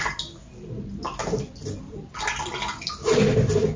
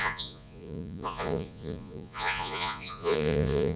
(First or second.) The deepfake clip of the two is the second